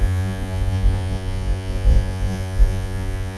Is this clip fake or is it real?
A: fake